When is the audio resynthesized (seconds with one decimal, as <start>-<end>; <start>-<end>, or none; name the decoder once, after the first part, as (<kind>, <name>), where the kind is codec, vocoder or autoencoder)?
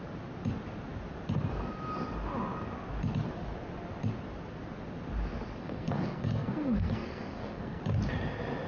5.6-7.8 (codec, SNAC)